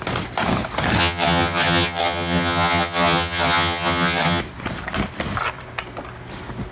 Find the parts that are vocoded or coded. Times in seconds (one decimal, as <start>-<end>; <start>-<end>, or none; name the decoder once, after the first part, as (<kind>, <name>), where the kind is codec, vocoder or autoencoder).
1.0-4.4 (vocoder, HiFi-GAN)